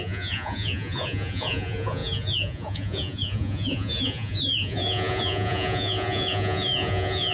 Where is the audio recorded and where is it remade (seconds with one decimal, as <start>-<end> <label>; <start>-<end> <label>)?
0.0-7.3 remade